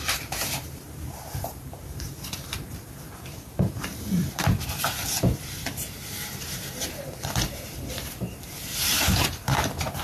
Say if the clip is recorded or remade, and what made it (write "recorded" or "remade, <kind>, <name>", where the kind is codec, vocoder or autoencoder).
remade, vocoder, BigVGAN v2